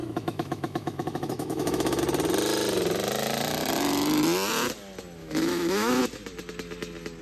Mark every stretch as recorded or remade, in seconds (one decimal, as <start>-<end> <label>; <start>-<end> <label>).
0.0-2.0 remade; 2.0-5.2 recorded; 5.2-6.0 remade; 6.0-7.2 recorded